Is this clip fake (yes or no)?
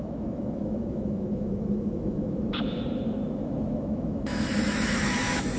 yes